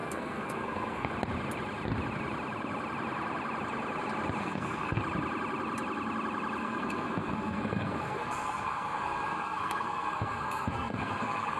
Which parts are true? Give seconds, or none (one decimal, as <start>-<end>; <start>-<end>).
1.1-4.4; 5.0-6.6